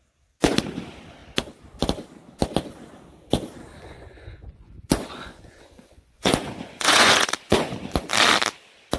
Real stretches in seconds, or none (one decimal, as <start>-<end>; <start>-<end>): 0.0-3.7; 7.7-9.0